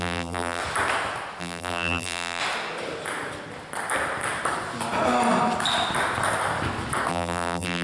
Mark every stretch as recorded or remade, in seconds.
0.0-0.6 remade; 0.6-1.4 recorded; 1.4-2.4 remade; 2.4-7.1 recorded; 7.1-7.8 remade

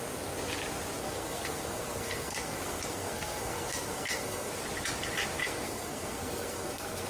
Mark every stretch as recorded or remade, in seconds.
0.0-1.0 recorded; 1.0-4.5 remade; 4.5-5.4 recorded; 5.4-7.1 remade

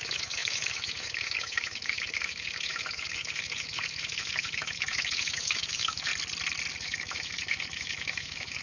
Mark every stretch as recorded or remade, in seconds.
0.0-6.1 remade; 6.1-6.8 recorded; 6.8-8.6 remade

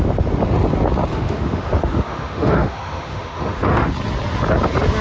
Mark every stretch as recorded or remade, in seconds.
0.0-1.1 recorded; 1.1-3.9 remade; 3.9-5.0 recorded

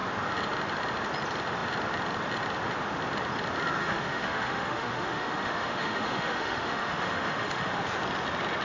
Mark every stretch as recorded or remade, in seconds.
0.0-3.8 recorded; 3.8-7.8 remade; 7.8-8.6 recorded

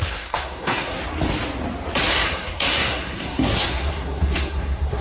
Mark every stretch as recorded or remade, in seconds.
0.0-1.0 remade; 1.0-2.1 recorded; 2.1-5.0 remade

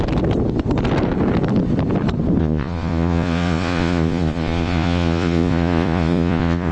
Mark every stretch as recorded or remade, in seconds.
0.0-2.4 recorded; 2.4-6.7 remade